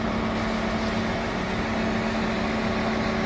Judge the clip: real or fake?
real